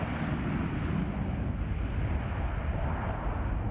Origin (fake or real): real